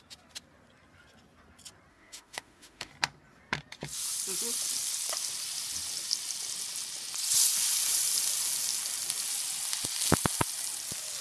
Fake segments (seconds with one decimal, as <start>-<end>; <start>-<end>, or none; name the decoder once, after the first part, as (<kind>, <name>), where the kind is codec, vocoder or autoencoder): 1.9-2.9 (autoencoder, DAC-VAE)

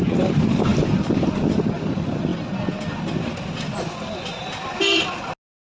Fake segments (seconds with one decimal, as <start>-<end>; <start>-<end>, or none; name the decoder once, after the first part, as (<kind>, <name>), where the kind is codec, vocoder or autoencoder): none

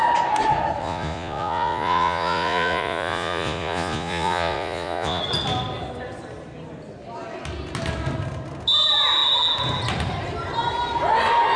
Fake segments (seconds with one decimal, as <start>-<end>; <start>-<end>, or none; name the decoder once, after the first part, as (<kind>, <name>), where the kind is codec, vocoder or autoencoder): 0.8-5.2 (vocoder, Vocos)

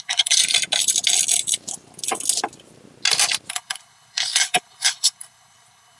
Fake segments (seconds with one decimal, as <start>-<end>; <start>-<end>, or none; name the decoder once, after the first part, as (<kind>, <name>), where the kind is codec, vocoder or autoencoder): 0.0-0.4 (codec, HILCodec); 3.5-6.0

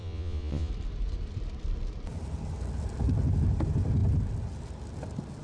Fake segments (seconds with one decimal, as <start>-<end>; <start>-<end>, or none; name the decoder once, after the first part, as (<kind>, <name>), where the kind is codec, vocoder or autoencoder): 0.0-0.7 (vocoder, Vocos)

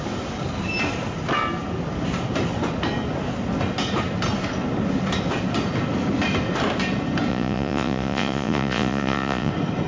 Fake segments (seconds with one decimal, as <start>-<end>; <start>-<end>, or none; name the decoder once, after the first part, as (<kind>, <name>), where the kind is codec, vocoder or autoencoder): 7.3-9.5 (vocoder, Vocos)

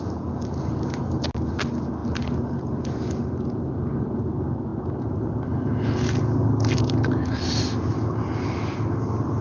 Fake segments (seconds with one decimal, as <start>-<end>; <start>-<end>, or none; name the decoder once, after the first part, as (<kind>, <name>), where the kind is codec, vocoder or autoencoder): none